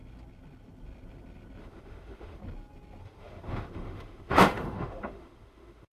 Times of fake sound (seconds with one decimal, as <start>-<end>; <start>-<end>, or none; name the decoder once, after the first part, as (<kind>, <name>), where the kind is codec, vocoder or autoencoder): 1.6-2.4 (autoencoder, DAC-VAE); 3.0-5.9